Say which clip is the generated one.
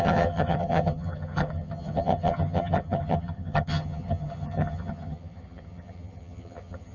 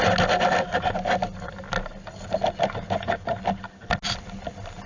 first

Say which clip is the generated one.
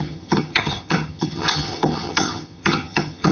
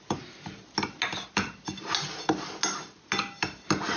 first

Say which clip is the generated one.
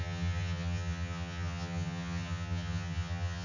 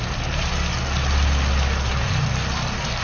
first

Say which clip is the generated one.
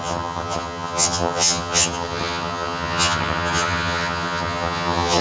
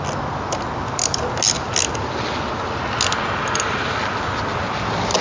first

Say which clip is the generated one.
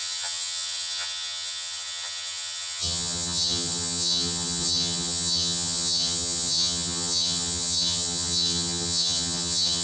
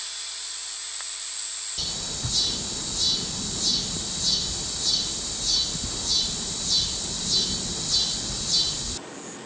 first